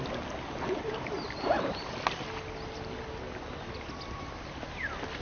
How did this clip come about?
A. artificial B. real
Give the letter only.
B